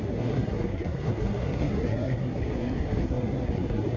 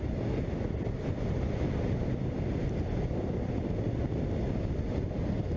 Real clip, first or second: second